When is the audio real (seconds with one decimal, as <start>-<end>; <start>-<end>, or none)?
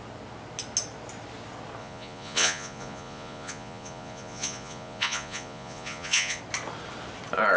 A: 0.0-1.8; 6.4-7.6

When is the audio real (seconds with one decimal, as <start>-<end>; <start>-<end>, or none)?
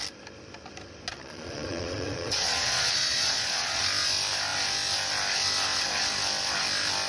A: 0.0-1.1; 3.8-7.1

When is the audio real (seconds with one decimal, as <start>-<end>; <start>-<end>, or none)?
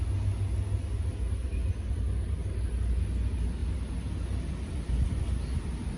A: 0.0-6.0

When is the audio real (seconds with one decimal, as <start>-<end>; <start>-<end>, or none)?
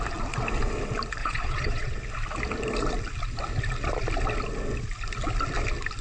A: 0.0-1.2; 2.0-6.0